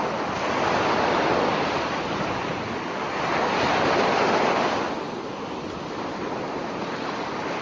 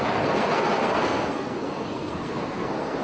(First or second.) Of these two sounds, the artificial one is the second